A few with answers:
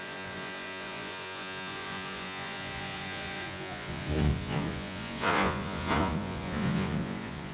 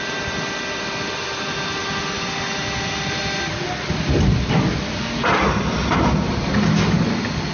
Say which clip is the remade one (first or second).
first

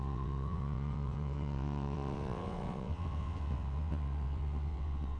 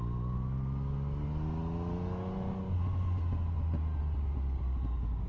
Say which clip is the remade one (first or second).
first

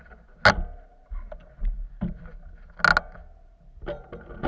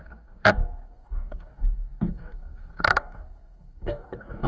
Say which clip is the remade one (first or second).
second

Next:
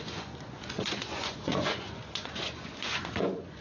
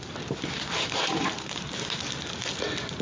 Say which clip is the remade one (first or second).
first